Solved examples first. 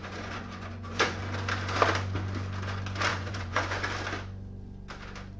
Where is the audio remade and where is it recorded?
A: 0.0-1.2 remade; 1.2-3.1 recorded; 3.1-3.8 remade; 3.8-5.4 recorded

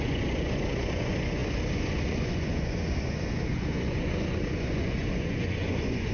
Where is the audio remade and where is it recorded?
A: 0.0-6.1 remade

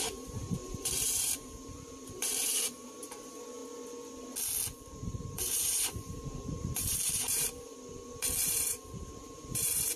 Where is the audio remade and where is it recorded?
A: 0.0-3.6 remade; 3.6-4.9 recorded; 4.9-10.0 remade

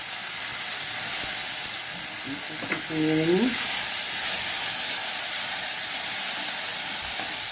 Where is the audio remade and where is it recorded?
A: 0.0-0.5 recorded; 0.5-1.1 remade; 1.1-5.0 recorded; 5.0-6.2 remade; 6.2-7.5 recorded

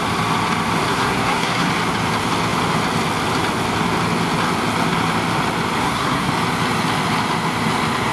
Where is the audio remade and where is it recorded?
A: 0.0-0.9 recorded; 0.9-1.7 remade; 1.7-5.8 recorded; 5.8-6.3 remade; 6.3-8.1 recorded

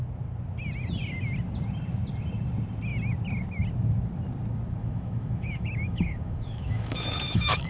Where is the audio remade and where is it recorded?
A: 0.0-4.8 recorded; 4.8-7.7 remade